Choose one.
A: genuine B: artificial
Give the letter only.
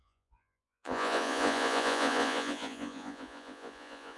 B